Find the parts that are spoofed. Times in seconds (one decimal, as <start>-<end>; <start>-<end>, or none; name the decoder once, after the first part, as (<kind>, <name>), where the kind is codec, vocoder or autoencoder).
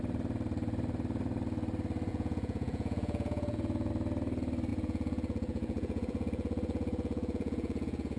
2.1-3.9 (vocoder, Vocos); 4.7-8.2